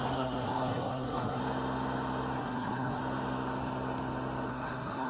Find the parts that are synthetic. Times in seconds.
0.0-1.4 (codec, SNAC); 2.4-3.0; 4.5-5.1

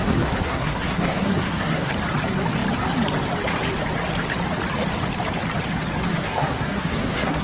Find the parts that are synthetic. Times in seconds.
0.0-1.9 (codec, SNAC); 6.1-7.4

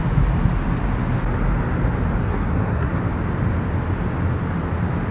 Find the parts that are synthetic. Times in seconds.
2.2-3.0 (codec, SNAC)

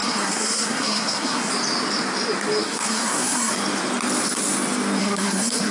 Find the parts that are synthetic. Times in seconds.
0.0-1.5 (codec, SNAC); 2.6-3.5; 5.0-5.7

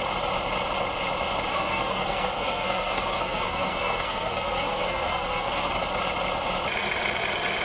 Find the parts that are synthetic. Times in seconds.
1.5-5.8 (codec, SNAC)

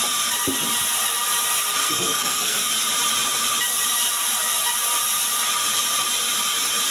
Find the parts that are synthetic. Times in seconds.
1.8-2.7 (codec, SNAC)

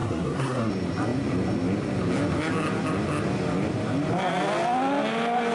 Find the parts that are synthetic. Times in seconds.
0.0-0.7 (codec, SNAC)

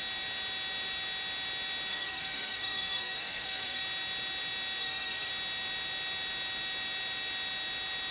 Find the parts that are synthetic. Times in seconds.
1.9-3.8 (codec, SNAC); 4.8-5.3